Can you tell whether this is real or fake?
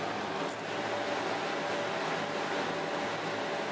real